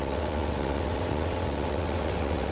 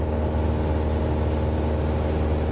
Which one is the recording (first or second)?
second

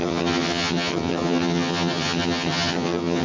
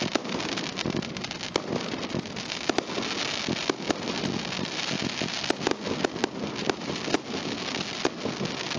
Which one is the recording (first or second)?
second